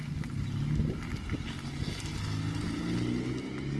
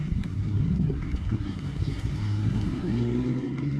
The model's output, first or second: second